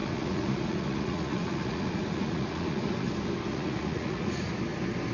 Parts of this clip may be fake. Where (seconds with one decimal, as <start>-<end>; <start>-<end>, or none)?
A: 0.0-3.1; 3.5-4.5